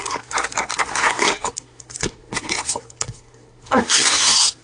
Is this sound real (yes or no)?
no